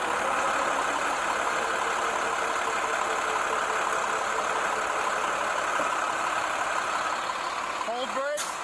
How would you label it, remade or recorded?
recorded